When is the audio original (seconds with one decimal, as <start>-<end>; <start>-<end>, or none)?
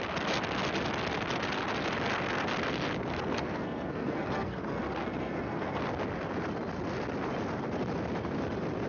0.0-3.1; 5.8-8.9